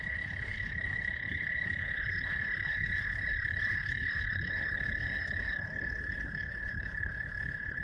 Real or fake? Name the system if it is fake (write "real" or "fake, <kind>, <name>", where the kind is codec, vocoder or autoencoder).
fake, codec, HILCodec